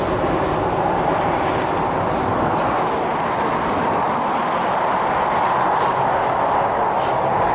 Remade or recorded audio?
recorded